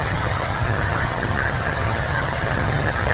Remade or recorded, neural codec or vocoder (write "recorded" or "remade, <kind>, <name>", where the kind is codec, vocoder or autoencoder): remade, vocoder, HiFi-GAN